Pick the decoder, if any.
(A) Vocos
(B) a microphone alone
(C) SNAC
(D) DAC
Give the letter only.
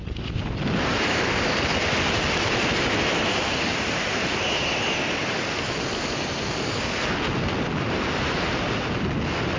B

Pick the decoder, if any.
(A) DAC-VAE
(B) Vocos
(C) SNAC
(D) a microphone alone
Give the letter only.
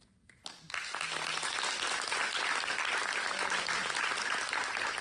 D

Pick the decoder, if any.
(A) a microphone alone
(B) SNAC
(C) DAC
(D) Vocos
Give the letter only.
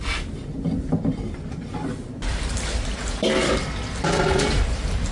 A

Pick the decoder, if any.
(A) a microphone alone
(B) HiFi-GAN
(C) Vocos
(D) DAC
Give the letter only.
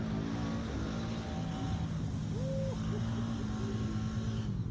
A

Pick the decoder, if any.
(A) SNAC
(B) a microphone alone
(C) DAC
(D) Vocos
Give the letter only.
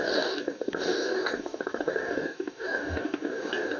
C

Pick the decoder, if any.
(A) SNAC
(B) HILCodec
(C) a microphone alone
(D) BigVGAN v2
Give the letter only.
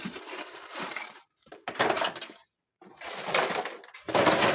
D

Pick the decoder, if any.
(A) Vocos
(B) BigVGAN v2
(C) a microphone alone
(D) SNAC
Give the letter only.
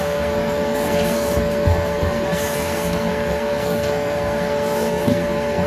D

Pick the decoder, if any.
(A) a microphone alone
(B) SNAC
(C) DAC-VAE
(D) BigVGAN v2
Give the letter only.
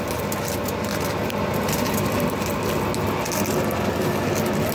A